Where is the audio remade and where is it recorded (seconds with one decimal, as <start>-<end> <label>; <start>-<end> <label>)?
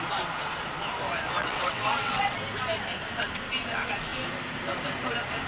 0.0-1.4 recorded; 1.4-2.4 remade; 2.4-5.5 recorded